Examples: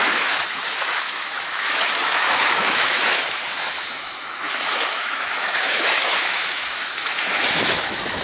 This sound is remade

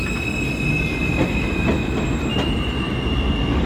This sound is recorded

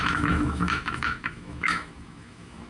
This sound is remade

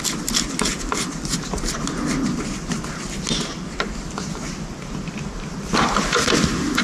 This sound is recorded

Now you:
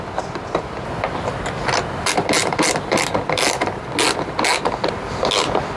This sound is recorded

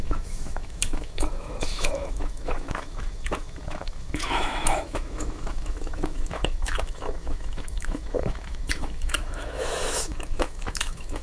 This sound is remade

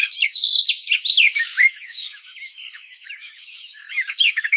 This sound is remade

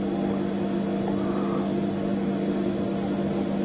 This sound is recorded